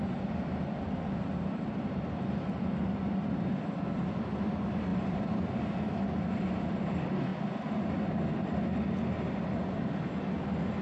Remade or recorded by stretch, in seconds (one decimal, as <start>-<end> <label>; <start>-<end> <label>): 0.0-4.9 recorded; 4.9-5.4 remade; 5.4-10.8 recorded